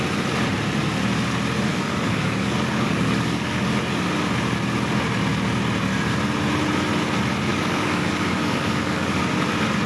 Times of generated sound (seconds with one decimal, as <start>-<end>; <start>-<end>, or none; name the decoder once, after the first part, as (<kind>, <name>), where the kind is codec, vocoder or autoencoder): 1.7-3.8 (codec, DAC); 7.5-9.2